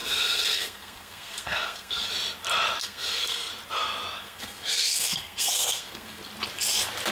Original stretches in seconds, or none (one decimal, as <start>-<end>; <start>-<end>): 2.1-2.8; 3.5-4.2; 6.2-7.1